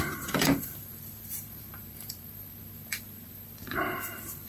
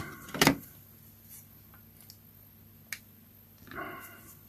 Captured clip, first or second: second